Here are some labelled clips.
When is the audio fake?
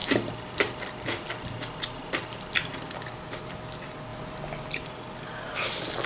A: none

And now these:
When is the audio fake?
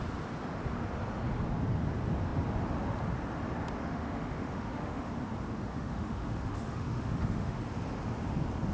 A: 3.8-5.1 (autoencoder, DAC-VAE); 5.7-7.6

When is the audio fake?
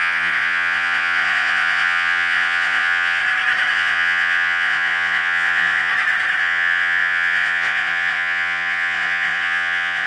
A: 0.0-3.2 (vocoder, Vocos); 3.7-5.9; 6.4-10.1